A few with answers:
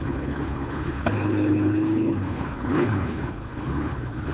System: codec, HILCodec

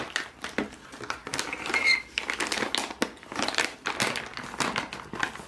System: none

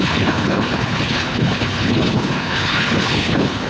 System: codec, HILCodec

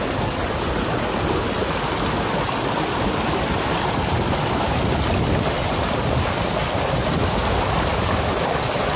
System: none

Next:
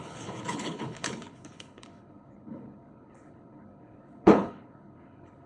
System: codec, HILCodec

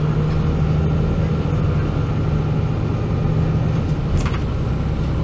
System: none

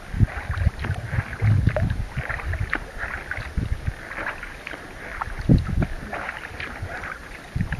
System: none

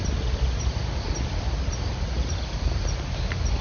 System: none